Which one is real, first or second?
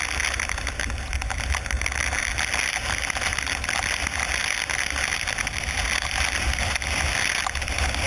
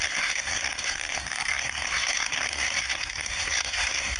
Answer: first